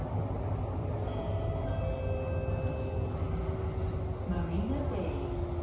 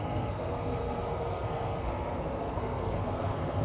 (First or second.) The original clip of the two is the first